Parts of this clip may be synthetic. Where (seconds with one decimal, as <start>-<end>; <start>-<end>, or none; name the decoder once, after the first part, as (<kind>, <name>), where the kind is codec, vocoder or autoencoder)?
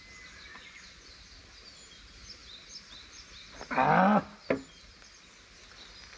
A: 0.5-1.1 (vocoder, Vocos)